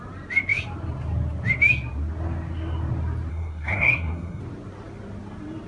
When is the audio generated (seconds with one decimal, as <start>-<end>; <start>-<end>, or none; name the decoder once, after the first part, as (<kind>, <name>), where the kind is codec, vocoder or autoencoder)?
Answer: 3.3-4.4 (codec, SNAC)